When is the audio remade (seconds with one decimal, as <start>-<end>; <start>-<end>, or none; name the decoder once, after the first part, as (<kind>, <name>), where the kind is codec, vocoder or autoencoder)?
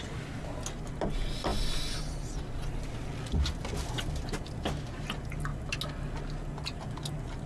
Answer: none